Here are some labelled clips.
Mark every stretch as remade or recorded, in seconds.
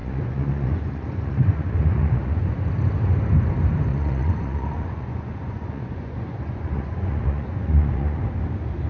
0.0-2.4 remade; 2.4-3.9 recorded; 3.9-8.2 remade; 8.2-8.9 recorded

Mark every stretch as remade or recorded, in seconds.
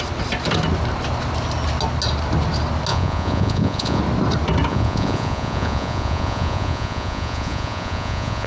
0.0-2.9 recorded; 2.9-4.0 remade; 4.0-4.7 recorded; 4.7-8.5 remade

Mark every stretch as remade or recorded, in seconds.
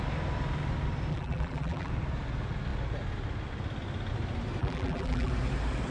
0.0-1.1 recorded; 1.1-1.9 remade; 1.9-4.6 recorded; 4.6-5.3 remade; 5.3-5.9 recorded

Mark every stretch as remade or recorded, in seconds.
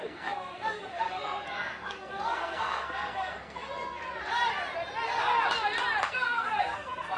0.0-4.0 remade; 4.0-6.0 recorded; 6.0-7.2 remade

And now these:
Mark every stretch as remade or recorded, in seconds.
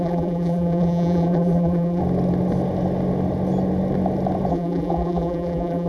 0.0-2.0 remade; 2.0-4.5 recorded; 4.5-5.9 remade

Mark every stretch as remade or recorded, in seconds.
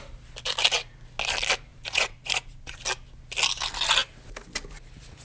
0.0-1.7 recorded; 1.7-2.8 remade; 2.8-5.2 recorded